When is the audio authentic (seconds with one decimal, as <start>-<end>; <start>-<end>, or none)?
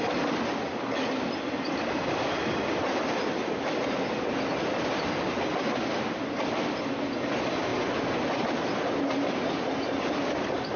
0.0-10.8